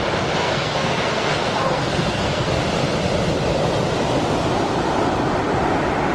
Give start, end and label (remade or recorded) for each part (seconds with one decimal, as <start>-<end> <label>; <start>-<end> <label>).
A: 0.0-0.4 recorded; 0.4-2.6 remade; 2.6-6.1 recorded